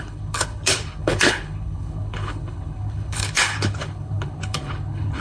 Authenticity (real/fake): fake